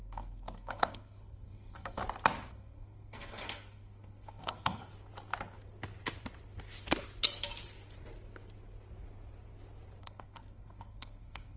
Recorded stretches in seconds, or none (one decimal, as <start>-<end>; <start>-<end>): 2.0-2.5; 4.8-10.0